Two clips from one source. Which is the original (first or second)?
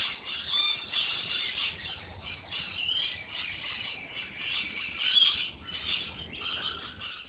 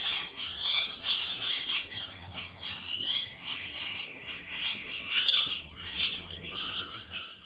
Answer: first